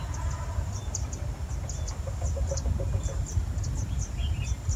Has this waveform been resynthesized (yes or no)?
no